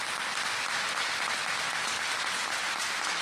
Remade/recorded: recorded